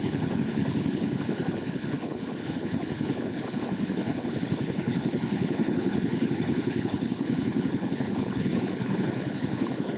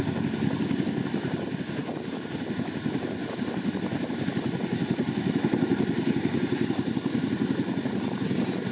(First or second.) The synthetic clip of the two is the first